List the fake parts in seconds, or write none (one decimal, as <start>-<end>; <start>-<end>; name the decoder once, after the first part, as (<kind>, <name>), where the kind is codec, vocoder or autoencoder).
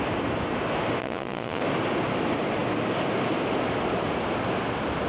1.0-1.6 (vocoder, Vocos)